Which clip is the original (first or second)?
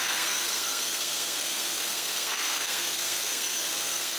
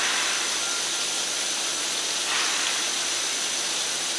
second